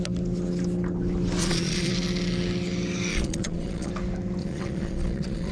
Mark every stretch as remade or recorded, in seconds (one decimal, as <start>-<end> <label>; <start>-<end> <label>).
0.0-1.4 recorded; 1.4-1.9 remade; 1.9-3.1 recorded; 3.1-3.9 remade; 3.9-4.4 recorded; 4.4-5.5 remade